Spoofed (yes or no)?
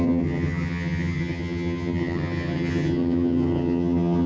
yes